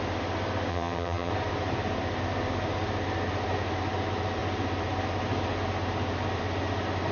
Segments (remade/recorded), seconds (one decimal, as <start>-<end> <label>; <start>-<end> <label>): 0.0-0.7 recorded; 0.7-1.3 remade; 1.3-7.1 recorded